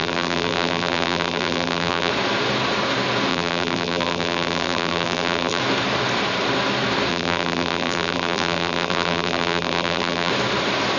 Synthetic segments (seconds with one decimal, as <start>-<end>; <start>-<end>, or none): 0.0-2.1; 3.3-5.6; 7.1-10.3